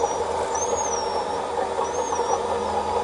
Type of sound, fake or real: real